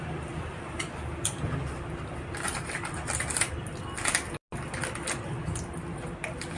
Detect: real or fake real